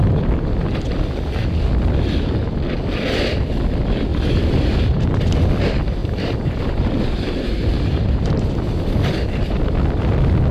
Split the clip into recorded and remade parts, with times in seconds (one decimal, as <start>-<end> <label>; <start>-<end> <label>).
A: 0.0-4.1 recorded; 4.1-5.5 remade; 5.5-6.0 recorded; 6.0-8.3 remade; 8.3-10.5 recorded